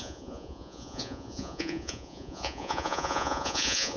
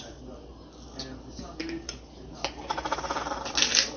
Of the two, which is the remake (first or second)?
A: first